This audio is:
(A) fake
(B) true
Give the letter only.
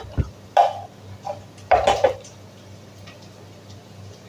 B